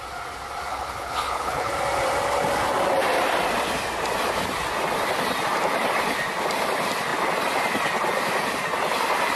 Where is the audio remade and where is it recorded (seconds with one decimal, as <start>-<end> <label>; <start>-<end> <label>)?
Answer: 0.0-0.7 recorded; 0.7-1.7 remade; 1.7-9.4 recorded